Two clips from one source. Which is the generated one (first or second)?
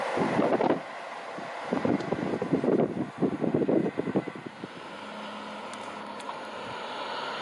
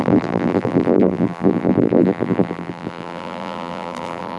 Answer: second